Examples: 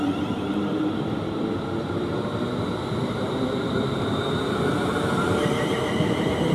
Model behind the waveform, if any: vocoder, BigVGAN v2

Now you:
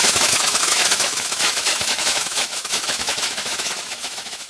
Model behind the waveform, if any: autoencoder, DAC-VAE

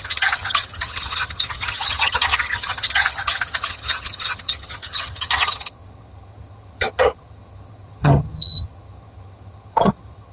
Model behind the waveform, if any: vocoder, HiFi-GAN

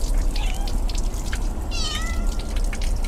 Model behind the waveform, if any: vocoder, BigVGAN v2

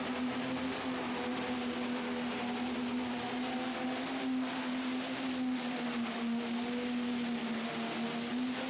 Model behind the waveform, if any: none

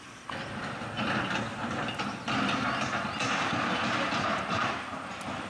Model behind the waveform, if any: none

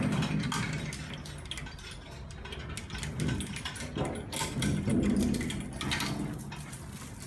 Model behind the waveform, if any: none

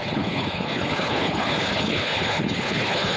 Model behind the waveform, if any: codec, HILCodec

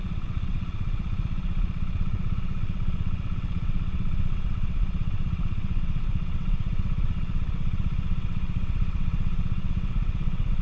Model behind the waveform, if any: vocoder, WaveNeXt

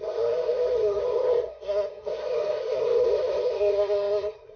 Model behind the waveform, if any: codec, SNAC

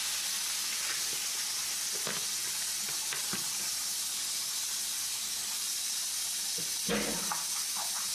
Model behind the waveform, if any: none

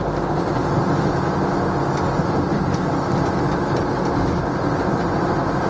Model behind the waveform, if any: none